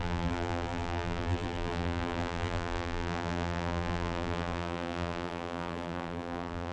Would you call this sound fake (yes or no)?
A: yes